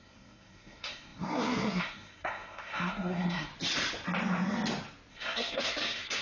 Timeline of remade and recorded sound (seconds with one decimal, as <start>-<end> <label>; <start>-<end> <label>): 0.0-3.5 remade; 3.5-5.1 recorded; 5.1-6.2 remade